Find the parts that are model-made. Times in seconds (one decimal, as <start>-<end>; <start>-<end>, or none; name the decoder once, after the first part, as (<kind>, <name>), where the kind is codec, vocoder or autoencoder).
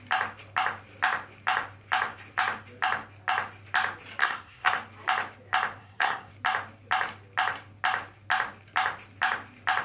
4.2-4.7 (codec, SNAC); 5.8-6.3